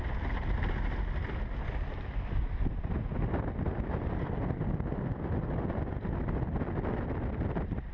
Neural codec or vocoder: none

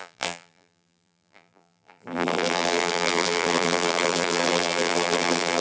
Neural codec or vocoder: vocoder, BigVGAN v2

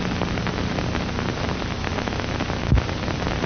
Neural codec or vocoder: none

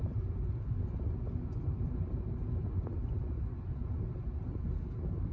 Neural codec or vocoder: none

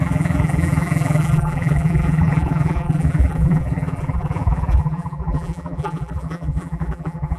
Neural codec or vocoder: vocoder, BigVGAN v2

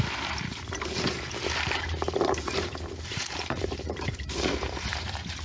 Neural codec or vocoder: vocoder, BigVGAN v2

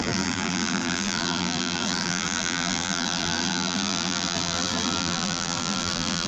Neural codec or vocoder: vocoder, BigVGAN v2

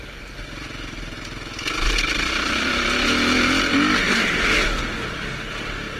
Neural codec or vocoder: none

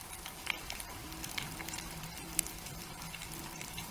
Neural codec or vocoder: vocoder, BigVGAN v2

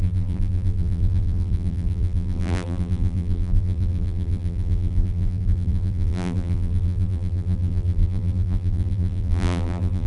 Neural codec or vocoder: vocoder, BigVGAN v2